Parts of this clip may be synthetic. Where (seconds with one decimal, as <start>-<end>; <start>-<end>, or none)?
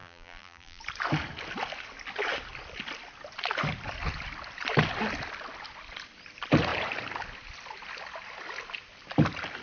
0.0-0.8